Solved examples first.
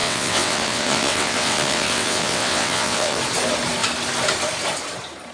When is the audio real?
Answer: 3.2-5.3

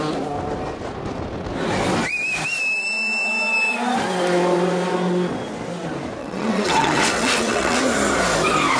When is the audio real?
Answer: 0.0-6.2; 7.8-8.8

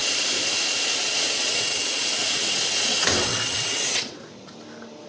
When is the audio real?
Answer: 0.0-1.1; 4.2-5.1